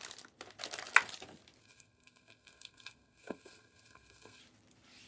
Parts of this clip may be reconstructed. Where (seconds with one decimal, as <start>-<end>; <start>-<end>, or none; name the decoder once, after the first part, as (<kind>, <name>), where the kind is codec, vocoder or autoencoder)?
1.6-4.4 (codec, SNAC)